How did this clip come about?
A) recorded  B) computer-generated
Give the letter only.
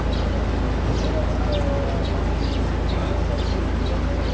A